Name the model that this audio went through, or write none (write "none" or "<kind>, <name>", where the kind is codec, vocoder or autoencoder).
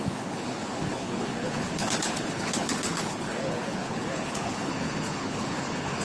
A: codec, HILCodec